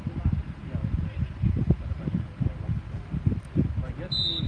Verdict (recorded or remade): recorded